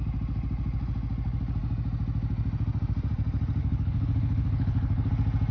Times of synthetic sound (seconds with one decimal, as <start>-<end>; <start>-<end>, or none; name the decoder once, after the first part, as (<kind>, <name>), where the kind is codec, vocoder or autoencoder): 3.6-5.1 (codec, HILCodec)